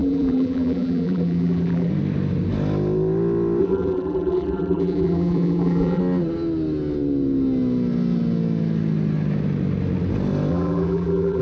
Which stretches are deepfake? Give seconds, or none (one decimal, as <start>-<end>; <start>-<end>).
0.0-1.9; 3.6-6.0; 10.5-11.4